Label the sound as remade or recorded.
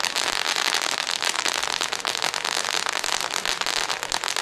recorded